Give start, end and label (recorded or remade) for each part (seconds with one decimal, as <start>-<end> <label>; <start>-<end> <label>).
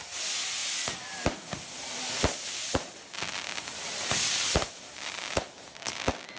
0.0-6.4 recorded